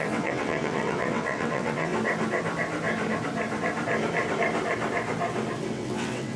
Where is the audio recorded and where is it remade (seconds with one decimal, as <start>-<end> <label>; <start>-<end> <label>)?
0.0-1.9 remade; 1.9-5.7 recorded; 5.7-6.4 remade